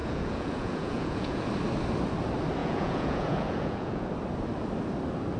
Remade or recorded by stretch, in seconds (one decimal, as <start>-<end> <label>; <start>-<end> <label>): 0.0-1.5 remade; 1.5-2.6 recorded; 2.6-4.1 remade; 4.1-5.4 recorded